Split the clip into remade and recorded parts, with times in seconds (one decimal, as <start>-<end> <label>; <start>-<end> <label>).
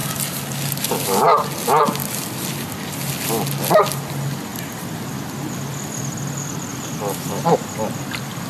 0.0-6.7 recorded; 6.7-8.0 remade; 8.0-8.5 recorded